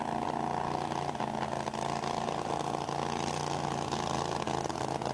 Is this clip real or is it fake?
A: real